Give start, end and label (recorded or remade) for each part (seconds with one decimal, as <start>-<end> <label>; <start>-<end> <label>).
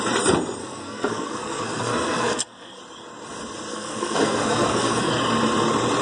0.0-0.6 recorded; 0.6-2.8 remade; 2.8-3.7 recorded; 3.7-5.1 remade; 5.1-6.0 recorded